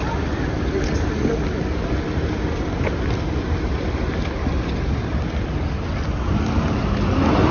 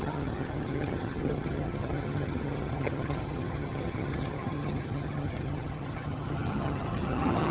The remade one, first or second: second